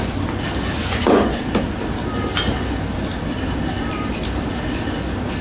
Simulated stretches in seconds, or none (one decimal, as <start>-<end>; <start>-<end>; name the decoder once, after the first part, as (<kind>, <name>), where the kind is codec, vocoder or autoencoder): 0.8-1.4 (vocoder, Vocos)